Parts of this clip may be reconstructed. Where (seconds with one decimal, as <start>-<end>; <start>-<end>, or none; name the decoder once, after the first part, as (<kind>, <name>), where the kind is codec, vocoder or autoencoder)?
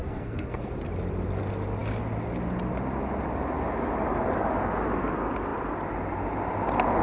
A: 0.0-0.7 (codec, SNAC)